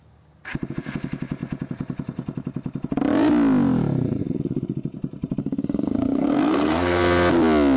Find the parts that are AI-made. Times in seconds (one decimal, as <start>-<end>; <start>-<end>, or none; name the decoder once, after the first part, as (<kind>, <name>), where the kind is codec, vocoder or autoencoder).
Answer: 5.4-7.0 (codec, SNAC)